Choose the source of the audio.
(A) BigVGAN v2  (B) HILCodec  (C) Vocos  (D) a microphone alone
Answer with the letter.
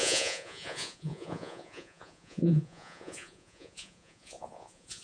C